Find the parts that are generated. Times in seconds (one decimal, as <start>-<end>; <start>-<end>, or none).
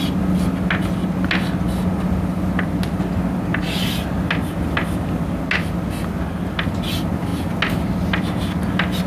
none